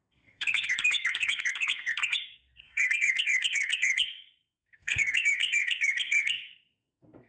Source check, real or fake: fake